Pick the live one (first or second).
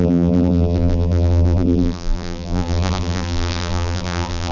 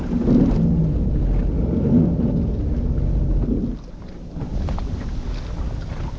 second